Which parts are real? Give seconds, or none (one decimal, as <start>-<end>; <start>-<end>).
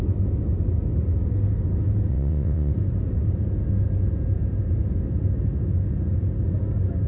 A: 0.0-2.1; 2.7-7.1